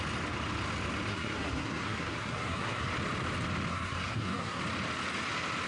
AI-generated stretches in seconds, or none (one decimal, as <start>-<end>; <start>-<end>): 1.1-2.9; 3.7-4.6